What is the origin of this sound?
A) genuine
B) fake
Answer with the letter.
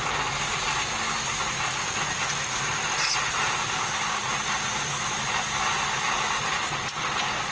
A